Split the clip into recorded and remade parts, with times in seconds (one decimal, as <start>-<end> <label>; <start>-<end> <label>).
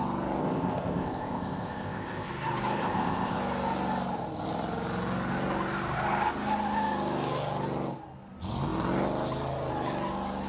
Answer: 0.0-0.4 recorded; 0.4-2.3 remade; 2.3-2.8 recorded; 2.8-3.4 remade; 3.4-10.5 recorded